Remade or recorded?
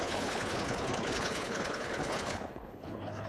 remade